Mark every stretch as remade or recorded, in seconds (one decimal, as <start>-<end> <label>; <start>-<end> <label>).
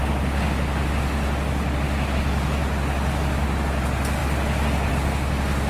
0.0-5.7 recorded